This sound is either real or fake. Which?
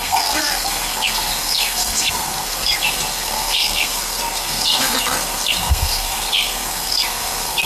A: fake